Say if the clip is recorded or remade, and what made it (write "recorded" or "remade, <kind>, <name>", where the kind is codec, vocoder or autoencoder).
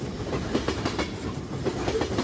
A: recorded